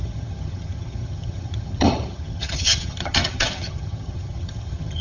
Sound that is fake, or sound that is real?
fake